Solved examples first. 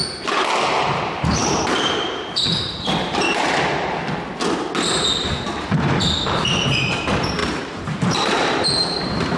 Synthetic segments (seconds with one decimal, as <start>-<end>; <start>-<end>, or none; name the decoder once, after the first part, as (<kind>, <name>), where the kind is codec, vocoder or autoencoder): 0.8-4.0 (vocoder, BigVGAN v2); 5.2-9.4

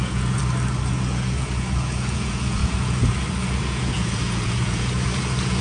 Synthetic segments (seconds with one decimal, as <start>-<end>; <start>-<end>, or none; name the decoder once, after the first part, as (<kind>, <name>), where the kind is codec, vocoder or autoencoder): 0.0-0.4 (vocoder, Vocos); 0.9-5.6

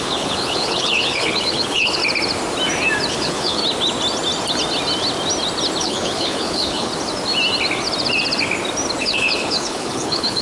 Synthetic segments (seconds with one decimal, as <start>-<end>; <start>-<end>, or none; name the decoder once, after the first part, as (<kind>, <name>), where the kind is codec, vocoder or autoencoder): 0.0-2.0 (codec, HILCodec); 3.1-3.6; 5.8-6.9; 9.0-10.4

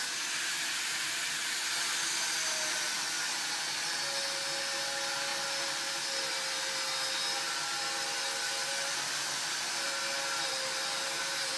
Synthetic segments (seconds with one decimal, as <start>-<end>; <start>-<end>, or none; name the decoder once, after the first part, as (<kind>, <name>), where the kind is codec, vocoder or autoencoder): none

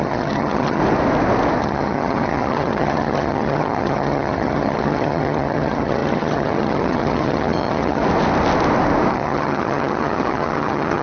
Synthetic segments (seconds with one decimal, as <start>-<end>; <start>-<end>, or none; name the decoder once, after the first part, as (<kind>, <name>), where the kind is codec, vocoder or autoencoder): 0.0-0.8 (vocoder, HiFi-GAN); 1.6-8.0; 9.1-11.0